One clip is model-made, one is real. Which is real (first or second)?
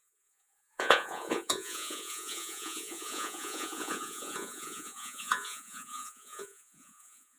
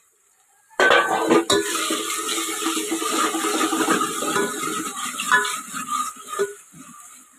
second